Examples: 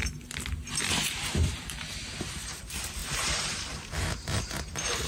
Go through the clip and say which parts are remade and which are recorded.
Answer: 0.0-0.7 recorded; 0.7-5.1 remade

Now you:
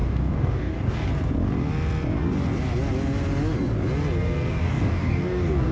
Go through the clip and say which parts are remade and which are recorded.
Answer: 0.0-1.1 remade; 1.1-4.5 recorded; 4.5-5.7 remade

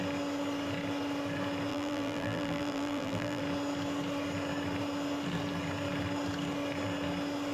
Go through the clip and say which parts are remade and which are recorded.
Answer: 0.0-1.7 recorded; 1.7-3.4 remade; 3.4-7.5 recorded

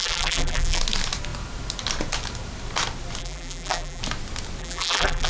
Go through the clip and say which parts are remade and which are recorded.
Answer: 0.0-0.8 remade; 0.8-3.2 recorded; 3.2-4.0 remade; 4.0-4.6 recorded; 4.6-5.3 remade

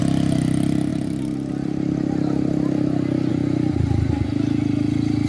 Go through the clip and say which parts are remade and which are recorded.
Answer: 0.0-5.3 recorded

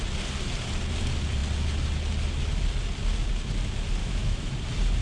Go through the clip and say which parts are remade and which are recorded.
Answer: 0.0-4.0 recorded; 4.0-4.5 remade; 4.5-5.0 recorded

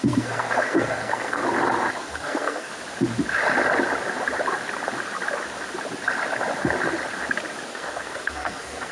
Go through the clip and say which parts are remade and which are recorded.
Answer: 0.0-1.4 remade; 1.4-2.0 recorded; 2.0-2.7 remade; 2.7-7.7 recorded; 7.7-8.9 remade

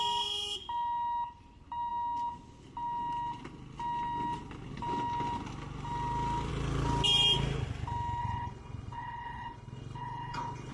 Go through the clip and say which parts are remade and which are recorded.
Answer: 0.0-8.2 recorded; 8.2-10.7 remade